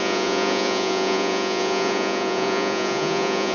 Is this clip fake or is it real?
fake